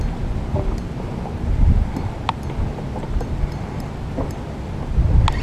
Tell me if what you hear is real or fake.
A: real